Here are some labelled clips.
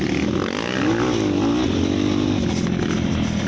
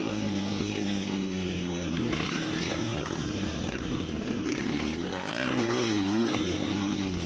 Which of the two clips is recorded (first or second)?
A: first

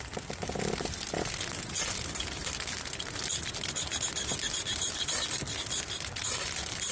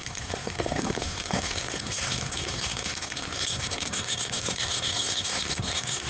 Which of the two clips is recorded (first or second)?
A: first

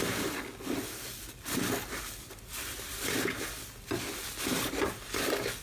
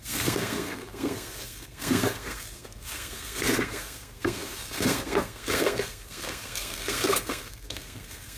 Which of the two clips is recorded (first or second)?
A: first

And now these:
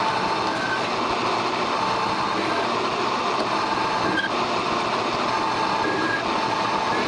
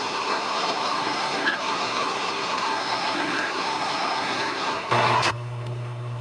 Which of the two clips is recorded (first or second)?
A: first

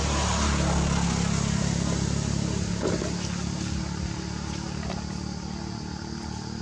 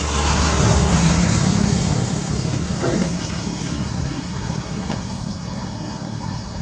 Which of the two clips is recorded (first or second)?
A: first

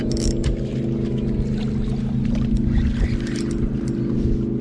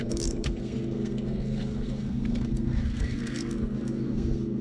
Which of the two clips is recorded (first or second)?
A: first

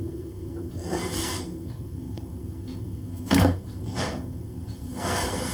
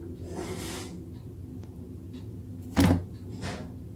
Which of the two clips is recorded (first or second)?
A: second